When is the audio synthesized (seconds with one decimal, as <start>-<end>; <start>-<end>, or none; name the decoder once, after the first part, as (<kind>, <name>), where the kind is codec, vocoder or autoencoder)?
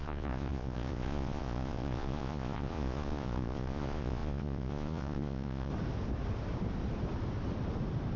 0.0-5.7 (vocoder, Vocos)